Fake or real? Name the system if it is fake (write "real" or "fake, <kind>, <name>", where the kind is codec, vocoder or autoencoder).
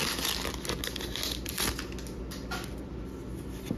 real